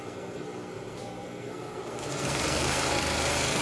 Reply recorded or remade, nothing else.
remade